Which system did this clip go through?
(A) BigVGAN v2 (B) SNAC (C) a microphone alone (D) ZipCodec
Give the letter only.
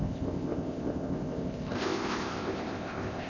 D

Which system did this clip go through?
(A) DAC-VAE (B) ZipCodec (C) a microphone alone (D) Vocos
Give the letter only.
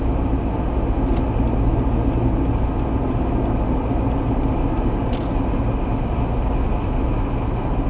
C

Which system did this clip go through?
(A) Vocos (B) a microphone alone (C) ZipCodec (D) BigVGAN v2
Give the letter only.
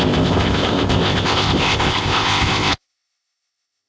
C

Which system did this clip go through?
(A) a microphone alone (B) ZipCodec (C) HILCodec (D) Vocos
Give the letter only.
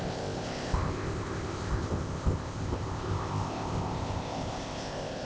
B